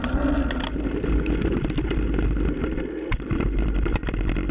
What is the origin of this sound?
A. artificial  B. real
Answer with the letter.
B